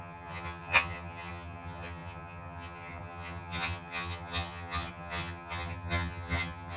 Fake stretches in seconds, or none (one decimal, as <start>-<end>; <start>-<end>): 0.0-6.8